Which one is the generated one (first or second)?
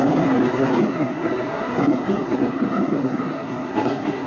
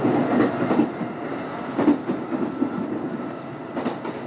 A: first